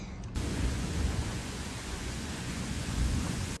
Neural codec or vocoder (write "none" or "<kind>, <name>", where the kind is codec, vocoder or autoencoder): vocoder, Vocos